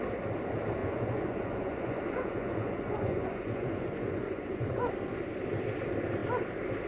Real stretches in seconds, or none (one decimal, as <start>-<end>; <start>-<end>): 0.0-0.8; 4.9-6.9